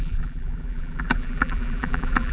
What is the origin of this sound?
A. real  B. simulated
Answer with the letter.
B